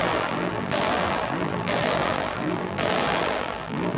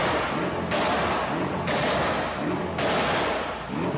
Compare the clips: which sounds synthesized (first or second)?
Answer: first